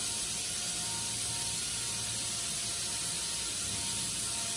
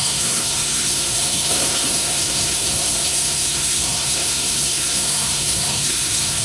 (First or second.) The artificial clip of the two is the second